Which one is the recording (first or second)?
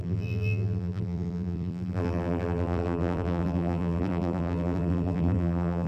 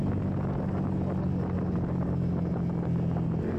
second